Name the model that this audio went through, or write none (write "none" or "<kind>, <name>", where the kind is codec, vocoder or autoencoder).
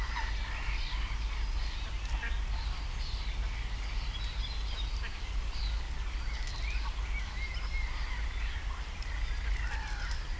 none